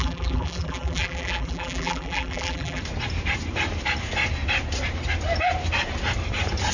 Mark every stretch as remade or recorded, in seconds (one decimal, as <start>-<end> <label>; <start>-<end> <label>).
0.0-2.8 remade; 2.8-6.7 recorded